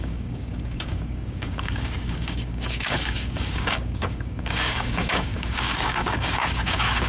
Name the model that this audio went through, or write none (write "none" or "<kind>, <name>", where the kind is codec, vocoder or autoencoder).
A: codec, DAC